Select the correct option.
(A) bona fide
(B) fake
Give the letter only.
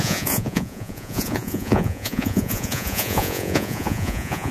B